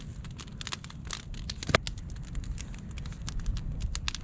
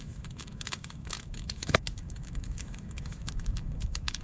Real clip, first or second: first